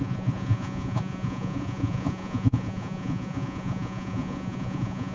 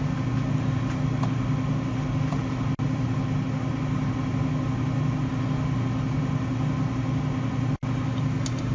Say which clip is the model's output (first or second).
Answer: first